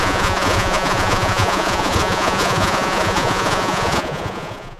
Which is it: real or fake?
fake